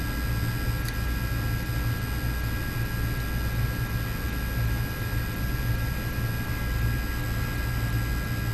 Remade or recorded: recorded